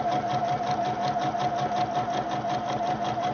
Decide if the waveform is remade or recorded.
recorded